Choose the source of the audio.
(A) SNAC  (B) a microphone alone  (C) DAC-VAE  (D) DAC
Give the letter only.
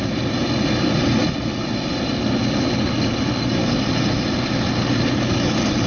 B